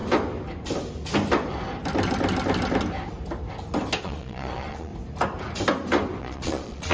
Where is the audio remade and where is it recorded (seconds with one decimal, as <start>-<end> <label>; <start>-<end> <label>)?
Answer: 0.0-4.0 recorded; 4.0-4.9 remade; 4.9-6.2 recorded; 6.2-6.9 remade